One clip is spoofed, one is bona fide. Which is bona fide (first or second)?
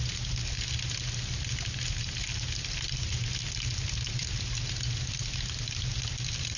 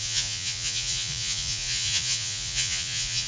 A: first